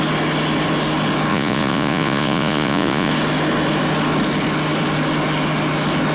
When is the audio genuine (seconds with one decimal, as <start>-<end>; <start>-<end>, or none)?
0.0-1.3; 3.1-6.1